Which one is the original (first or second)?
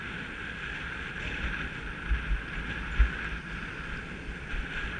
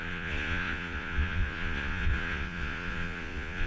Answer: first